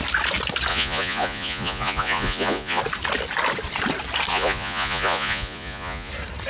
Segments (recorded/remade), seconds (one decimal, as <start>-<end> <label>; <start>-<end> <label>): 0.0-0.7 recorded; 0.7-2.8 remade; 2.8-4.3 recorded; 4.3-6.1 remade; 6.1-6.5 recorded